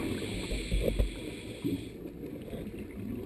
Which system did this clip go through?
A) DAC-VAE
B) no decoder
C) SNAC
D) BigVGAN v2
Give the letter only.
B